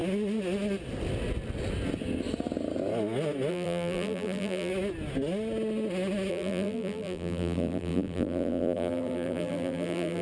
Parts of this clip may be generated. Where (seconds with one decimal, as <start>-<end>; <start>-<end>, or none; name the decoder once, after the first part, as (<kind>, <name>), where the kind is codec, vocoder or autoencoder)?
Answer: 3.5-4.7 (vocoder, BigVGAN v2); 6.3-10.2